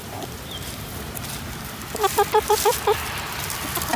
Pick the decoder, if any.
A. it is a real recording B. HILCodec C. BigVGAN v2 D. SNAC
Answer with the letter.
C